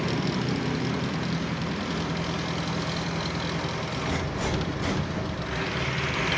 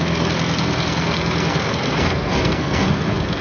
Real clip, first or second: first